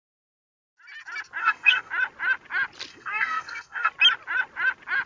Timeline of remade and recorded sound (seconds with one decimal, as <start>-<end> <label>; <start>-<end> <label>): 0.0-1.4 recorded; 1.4-1.9 remade; 1.9-2.9 recorded; 2.9-3.9 remade; 3.9-5.1 recorded